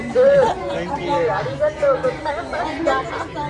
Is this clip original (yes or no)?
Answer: yes